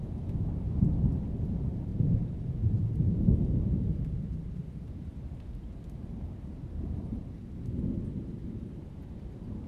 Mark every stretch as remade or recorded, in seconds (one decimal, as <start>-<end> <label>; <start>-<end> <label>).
0.0-7.2 remade; 7.2-8.2 recorded; 8.2-9.7 remade